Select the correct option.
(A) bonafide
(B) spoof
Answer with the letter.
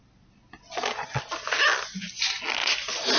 A